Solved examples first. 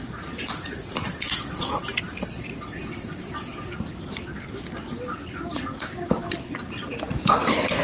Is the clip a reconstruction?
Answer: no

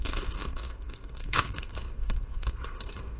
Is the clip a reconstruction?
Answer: yes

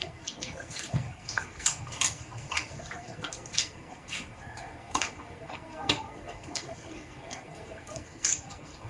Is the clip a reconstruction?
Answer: yes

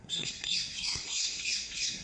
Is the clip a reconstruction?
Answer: yes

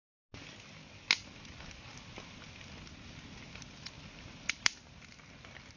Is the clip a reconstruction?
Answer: no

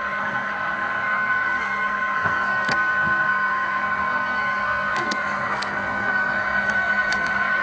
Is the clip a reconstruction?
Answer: yes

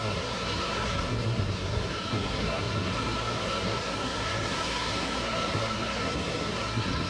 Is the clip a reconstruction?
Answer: yes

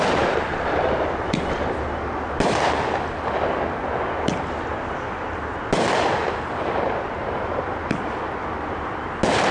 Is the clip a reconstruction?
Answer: no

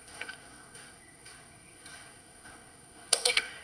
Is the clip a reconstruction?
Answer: yes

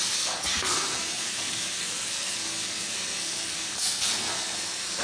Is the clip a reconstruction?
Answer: yes